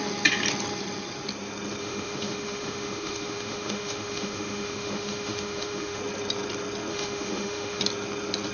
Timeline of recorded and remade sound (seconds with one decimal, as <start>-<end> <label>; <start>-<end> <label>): 0.0-1.8 recorded; 1.8-6.0 remade; 6.0-6.9 recorded; 6.9-7.8 remade; 7.8-8.5 recorded